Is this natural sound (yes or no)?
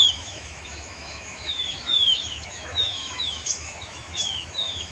no